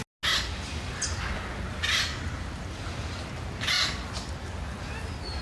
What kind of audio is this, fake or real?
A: real